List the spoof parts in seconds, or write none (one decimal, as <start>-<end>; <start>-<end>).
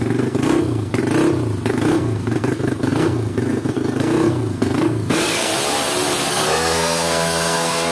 0.0-1.0; 1.7-5.5; 6.3-7.9